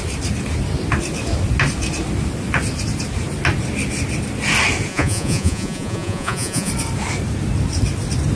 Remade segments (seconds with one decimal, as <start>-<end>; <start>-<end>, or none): 4.9-6.7